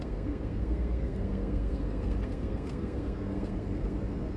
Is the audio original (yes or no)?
no